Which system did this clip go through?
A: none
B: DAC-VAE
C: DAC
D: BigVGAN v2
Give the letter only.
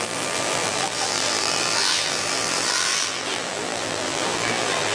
D